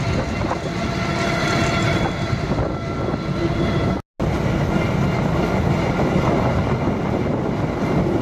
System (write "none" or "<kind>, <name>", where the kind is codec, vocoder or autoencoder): none